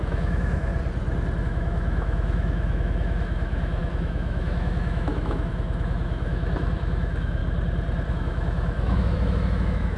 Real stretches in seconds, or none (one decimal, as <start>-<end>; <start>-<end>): 0.7-1.4; 7.4-8.1